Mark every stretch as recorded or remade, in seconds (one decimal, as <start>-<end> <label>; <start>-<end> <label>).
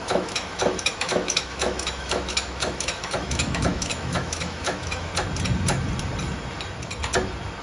0.0-5.1 remade; 5.1-7.6 recorded